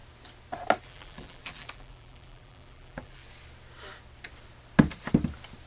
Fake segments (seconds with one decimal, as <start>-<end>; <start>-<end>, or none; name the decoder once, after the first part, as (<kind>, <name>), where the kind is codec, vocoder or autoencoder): 0.8-3.2 (vocoder, BigVGAN v2)